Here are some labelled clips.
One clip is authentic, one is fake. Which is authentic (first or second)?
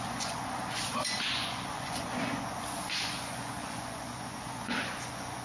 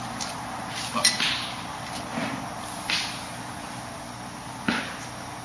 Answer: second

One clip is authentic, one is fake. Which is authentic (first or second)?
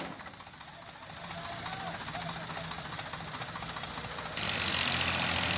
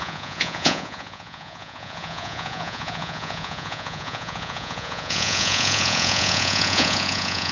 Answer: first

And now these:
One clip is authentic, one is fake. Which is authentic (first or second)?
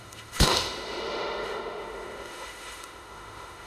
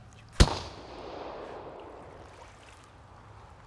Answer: second